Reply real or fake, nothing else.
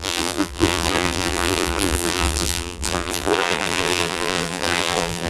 fake